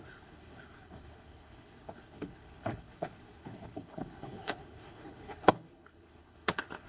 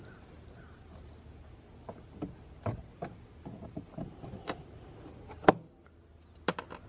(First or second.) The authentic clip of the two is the second